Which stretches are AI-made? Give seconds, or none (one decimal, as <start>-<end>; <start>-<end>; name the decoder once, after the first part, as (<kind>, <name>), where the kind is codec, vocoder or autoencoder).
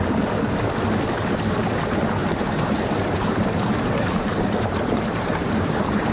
2.2-6.1 (vocoder, BigVGAN v2)